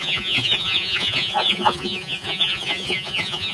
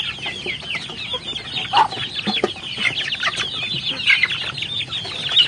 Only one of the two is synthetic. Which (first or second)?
first